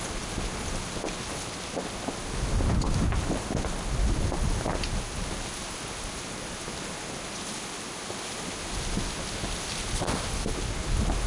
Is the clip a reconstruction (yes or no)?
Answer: no